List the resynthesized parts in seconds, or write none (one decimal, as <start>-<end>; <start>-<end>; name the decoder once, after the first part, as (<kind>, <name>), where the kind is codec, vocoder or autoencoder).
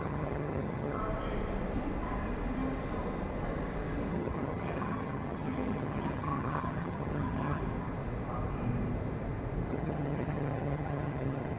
0.0-1.0 (vocoder, HiFi-GAN); 4.1-7.6; 9.7-11.6